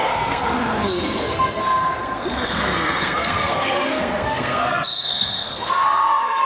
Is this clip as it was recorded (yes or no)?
no